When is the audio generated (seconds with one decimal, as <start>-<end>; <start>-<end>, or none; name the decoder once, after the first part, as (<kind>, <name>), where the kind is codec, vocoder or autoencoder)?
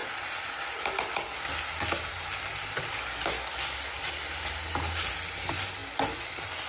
none